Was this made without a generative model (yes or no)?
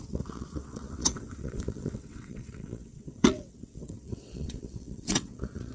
no